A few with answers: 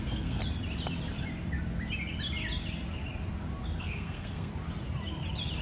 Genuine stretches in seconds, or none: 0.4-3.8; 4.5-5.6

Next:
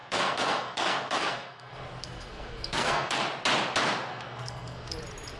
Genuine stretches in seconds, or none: 3.2-4.1; 4.9-5.4

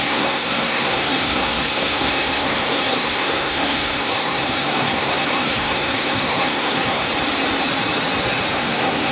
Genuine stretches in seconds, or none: 7.1-8.5

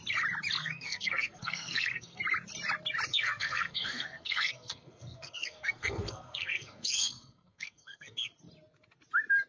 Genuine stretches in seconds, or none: 0.0-0.6; 2.2-3.1; 8.3-9.5

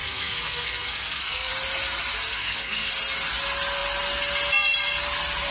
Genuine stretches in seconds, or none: 1.5-2.3; 2.9-5.5

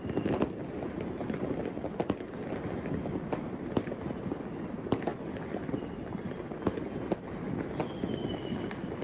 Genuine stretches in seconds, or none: 0.0-9.0